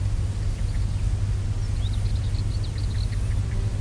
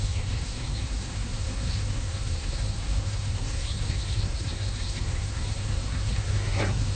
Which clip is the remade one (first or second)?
second